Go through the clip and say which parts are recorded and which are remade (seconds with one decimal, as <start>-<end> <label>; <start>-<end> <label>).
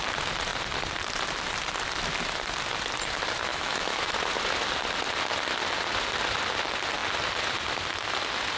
0.0-3.5 recorded; 3.5-4.1 remade; 4.1-8.6 recorded